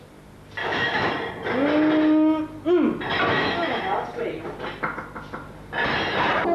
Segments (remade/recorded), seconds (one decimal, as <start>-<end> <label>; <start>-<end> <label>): 0.0-0.6 recorded; 0.6-1.1 remade; 1.1-3.3 recorded; 3.3-3.8 remade; 3.8-6.5 recorded